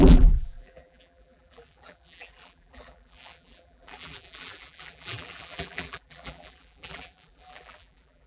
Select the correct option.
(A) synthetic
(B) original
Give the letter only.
A